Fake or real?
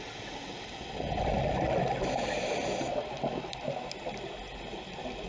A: real